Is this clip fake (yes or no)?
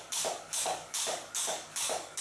yes